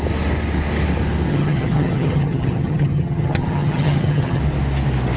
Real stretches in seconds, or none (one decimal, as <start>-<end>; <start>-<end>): 0.0-1.3; 4.4-5.2